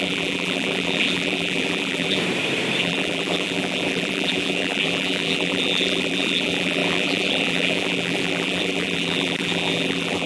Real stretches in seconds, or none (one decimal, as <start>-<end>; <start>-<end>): 2.2-2.8